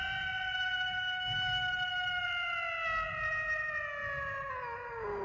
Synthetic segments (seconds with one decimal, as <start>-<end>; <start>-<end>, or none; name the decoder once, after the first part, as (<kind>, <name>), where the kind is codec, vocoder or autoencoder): none